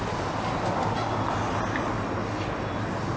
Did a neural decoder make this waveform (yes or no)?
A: no